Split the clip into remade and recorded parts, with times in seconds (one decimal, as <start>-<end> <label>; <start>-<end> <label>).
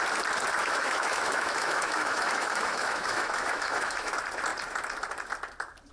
0.0-0.6 recorded; 0.6-4.1 remade; 4.1-5.9 recorded